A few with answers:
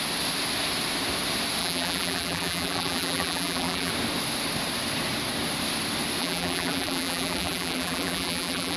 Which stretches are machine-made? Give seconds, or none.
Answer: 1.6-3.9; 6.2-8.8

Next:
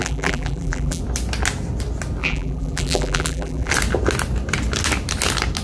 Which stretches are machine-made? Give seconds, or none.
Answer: 0.0-1.0; 2.2-3.7

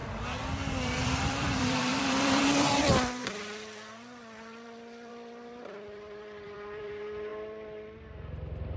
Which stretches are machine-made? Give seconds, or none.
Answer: 0.0-7.3

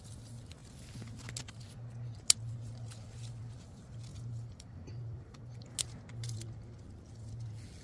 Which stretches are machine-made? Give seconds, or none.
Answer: 4.1-5.8

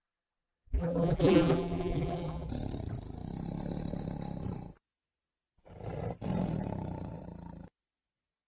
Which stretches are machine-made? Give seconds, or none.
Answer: 0.0-2.5

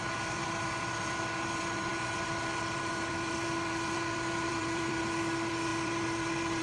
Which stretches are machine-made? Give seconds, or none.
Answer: 4.5-5.0; 5.7-6.6